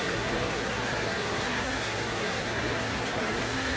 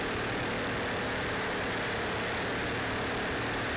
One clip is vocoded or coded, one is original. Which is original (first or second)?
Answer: second